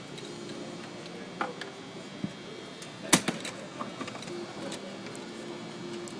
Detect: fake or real real